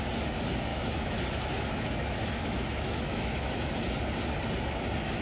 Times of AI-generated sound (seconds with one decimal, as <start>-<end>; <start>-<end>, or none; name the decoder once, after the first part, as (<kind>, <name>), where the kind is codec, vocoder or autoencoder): 0.7-3.7 (autoencoder, DAC-VAE)